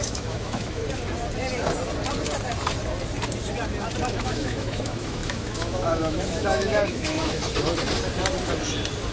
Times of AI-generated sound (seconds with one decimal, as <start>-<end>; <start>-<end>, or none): 0.0-0.8; 4.0-7.4